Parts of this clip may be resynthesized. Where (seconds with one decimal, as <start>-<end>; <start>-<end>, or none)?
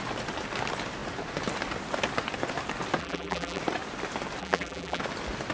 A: 3.0-3.6; 4.4-5.0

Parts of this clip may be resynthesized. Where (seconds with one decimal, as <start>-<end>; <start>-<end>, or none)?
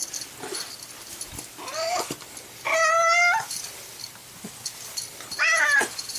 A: none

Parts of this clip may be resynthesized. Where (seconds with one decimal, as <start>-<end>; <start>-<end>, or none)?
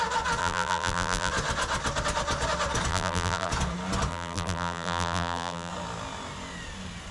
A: 0.4-1.3; 2.9-3.5; 4.1-5.7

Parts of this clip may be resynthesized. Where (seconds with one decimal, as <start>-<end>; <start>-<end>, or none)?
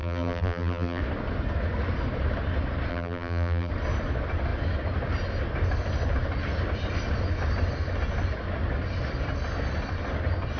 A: 0.0-1.0; 2.9-3.7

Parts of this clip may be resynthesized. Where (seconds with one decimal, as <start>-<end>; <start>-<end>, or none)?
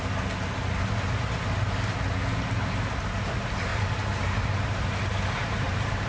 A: 3.7-6.1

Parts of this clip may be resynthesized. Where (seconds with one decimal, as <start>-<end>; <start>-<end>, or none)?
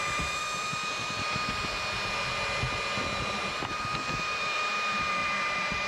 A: 0.0-1.0; 3.2-5.9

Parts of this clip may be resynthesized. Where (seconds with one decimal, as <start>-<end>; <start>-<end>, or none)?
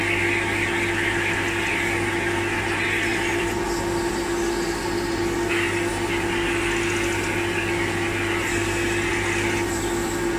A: 3.1-3.7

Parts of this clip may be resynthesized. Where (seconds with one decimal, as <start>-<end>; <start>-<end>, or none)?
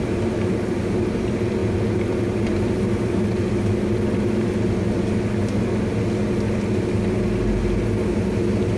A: none